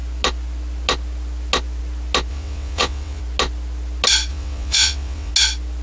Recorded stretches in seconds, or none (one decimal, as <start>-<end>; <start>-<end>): 0.0-2.3; 3.2-4.3; 5.3-5.8